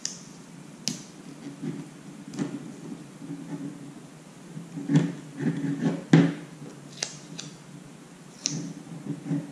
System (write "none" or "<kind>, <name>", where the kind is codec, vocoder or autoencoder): none